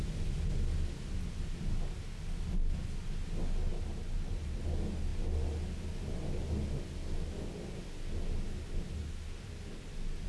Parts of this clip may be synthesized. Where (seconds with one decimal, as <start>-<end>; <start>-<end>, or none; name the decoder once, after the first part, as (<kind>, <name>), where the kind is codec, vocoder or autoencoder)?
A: 3.7-4.6 (vocoder, BigVGAN v2)